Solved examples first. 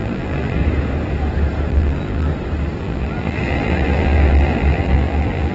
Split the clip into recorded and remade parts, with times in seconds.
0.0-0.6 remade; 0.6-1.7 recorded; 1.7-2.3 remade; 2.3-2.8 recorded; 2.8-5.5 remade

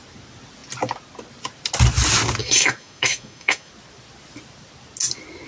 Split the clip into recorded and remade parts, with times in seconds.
0.0-2.4 recorded; 2.4-3.7 remade; 3.7-5.5 recorded

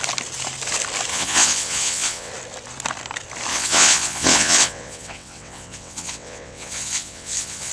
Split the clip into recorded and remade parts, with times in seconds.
0.0-1.1 recorded; 1.1-2.3 remade; 2.3-3.5 recorded; 3.5-7.7 remade

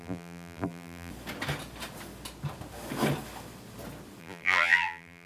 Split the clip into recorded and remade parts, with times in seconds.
0.0-1.1 remade; 1.1-4.2 recorded; 4.2-5.3 remade

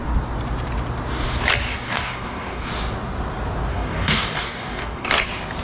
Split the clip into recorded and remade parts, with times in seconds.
0.0-1.7 recorded; 1.7-2.7 remade; 2.7-3.7 recorded; 3.7-5.1 remade; 5.1-5.6 recorded

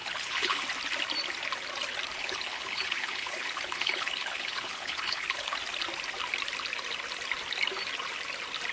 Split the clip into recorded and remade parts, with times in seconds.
0.0-0.6 remade; 0.6-2.2 recorded; 2.2-5.6 remade; 5.6-8.7 recorded

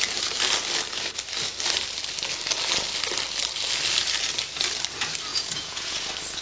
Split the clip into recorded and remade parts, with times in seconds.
0.0-5.3 recorded; 5.3-6.0 remade; 6.0-6.4 recorded

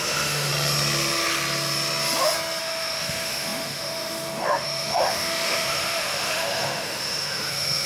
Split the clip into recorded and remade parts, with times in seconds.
0.0-0.5 remade; 0.5-2.6 recorded; 2.6-7.9 remade